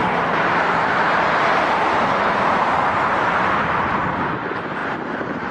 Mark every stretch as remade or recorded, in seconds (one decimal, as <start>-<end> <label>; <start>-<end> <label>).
0.0-3.3 remade; 3.3-4.8 recorded; 4.8-5.5 remade